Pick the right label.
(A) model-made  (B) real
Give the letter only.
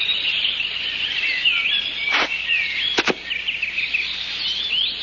B